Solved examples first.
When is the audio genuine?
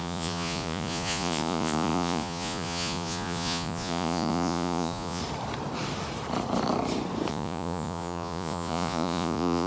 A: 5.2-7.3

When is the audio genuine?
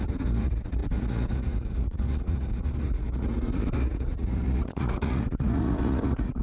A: none